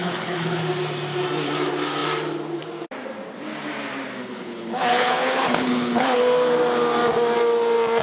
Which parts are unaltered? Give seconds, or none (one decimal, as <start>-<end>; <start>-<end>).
0.6-4.2; 6.2-8.0